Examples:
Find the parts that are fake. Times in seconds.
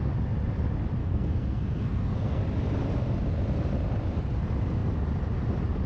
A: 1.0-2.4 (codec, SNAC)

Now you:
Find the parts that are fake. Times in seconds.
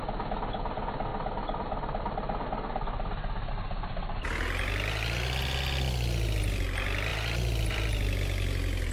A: 1.1-3.5 (vocoder, BigVGAN v2)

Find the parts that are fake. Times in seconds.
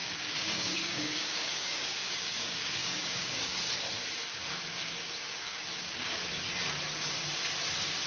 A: 0.0-3.6 (codec, DAC); 4.4-6.3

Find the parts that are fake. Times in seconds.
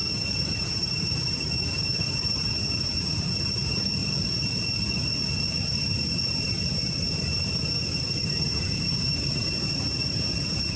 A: 0.0-4.0 (vocoder, BigVGAN v2); 6.1-10.8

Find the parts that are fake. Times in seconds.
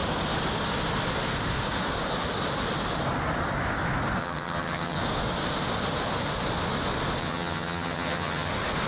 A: 4.2-5.0 (vocoder, HiFi-GAN); 7.2-8.5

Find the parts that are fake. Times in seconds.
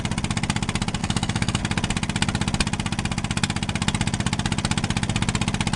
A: 1.0-1.6 (autoencoder, DAC-VAE)